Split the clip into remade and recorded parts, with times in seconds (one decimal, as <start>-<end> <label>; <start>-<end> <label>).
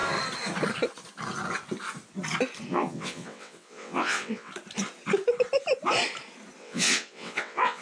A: 0.0-2.7 recorded; 2.7-4.5 remade; 4.5-6.6 recorded; 6.6-7.8 remade